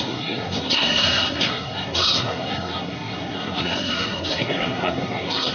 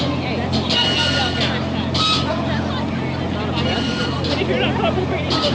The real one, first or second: second